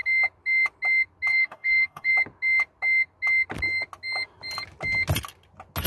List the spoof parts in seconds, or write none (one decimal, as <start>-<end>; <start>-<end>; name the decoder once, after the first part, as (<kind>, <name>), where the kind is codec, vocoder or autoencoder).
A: 1.3-2.1 (codec, DAC)